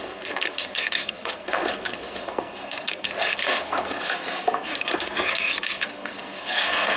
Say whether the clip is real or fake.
fake